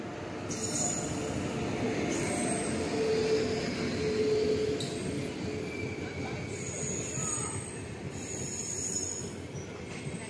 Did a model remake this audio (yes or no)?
no